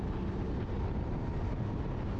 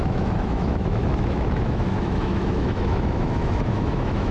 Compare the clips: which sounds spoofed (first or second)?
second